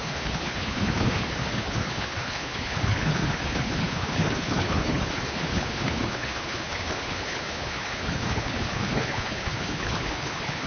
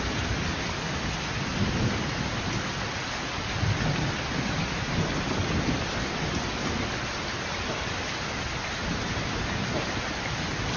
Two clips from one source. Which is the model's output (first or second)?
first